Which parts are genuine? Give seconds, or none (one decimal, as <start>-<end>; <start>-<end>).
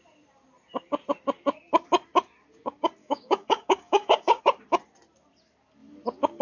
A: 0.0-3.0; 4.4-6.4